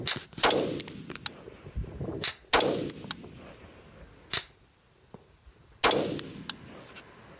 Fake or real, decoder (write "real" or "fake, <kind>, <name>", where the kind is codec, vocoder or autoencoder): real